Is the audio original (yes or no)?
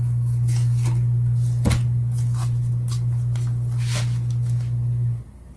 yes